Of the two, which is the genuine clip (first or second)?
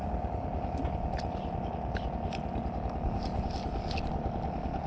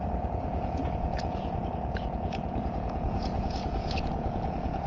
first